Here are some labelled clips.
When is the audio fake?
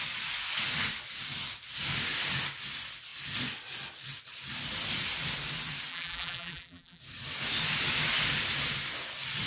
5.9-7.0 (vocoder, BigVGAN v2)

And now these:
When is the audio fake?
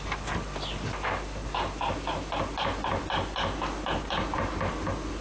none